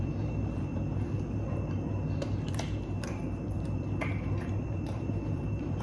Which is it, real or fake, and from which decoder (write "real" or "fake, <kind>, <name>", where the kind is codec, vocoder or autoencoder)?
fake, vocoder, BigVGAN v2